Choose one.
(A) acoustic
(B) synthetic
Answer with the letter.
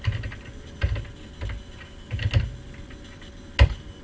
A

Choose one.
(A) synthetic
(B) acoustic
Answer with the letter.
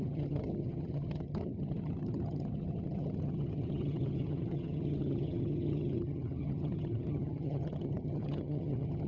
A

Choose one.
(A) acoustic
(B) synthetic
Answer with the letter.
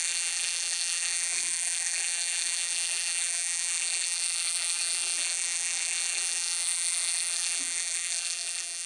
B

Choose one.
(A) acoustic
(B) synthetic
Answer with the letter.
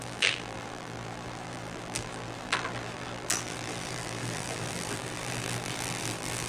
B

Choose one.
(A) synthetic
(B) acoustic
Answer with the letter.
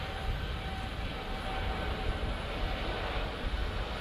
B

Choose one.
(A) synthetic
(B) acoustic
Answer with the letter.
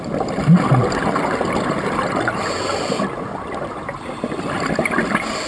B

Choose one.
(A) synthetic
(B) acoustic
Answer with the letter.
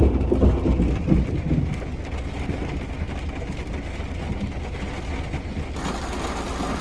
B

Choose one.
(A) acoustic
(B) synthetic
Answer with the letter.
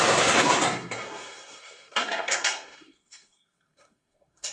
B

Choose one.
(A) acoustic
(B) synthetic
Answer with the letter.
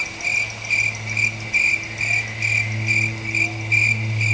A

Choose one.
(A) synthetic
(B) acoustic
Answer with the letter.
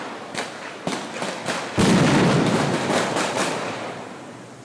A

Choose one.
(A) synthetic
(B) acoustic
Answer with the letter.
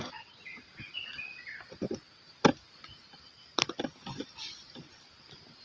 B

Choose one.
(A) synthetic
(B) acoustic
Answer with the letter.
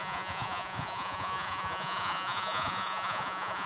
A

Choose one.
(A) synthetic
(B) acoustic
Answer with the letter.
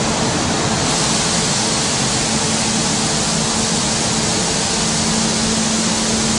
B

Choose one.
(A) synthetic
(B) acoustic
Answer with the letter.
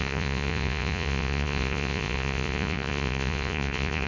A